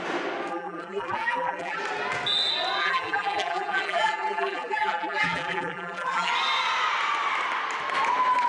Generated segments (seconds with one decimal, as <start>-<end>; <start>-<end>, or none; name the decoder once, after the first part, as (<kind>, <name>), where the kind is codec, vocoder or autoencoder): 0.5-1.8 (vocoder, BigVGAN v2); 2.8-6.3